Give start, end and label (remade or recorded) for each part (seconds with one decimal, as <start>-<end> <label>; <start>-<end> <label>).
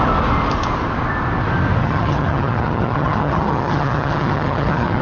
0.0-1.8 recorded; 1.8-5.0 remade